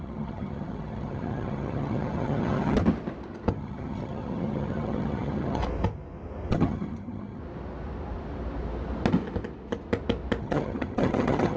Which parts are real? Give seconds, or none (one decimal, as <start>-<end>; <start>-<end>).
2.8-3.5; 5.6-6.5; 7.4-10.4